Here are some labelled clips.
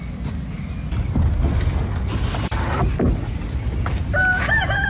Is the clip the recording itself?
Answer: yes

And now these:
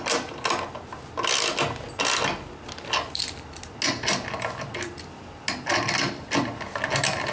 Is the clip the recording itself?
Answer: yes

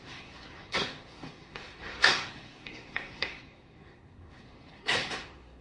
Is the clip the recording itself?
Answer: no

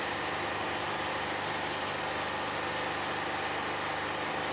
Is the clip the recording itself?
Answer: yes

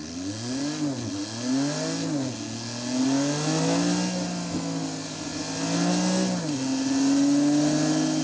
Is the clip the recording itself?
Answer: yes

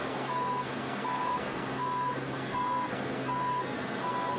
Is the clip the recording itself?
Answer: no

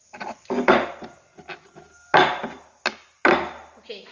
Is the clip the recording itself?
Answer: yes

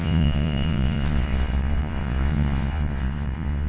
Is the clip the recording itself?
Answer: no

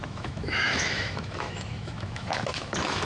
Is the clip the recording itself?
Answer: no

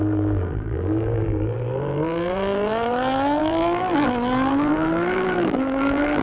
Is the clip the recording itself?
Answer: no